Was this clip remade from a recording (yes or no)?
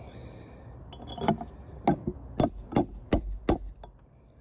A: no